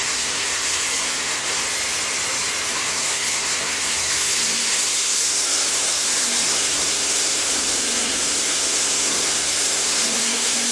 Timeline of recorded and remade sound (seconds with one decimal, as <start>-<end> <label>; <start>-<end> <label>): 0.0-1.6 remade; 1.6-2.7 recorded; 2.7-10.7 remade